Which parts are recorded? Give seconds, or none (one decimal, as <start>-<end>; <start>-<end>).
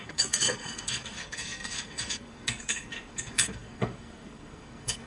none